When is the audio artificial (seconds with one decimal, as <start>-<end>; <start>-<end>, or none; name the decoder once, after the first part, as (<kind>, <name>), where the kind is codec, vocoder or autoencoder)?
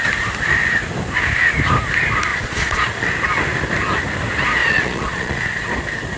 2.3-3.1 (vocoder, Vocos); 4.6-5.7